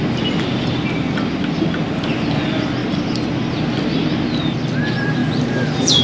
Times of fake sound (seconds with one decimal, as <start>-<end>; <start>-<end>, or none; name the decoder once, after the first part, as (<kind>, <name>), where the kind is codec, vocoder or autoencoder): none